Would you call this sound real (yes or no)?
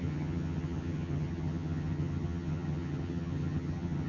no